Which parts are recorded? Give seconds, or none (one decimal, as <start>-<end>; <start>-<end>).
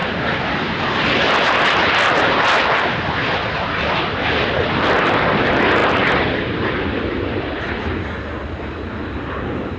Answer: 0.0-5.8; 7.6-9.8